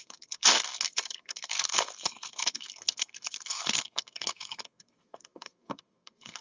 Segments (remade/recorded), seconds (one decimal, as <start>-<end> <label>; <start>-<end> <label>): 0.0-6.4 remade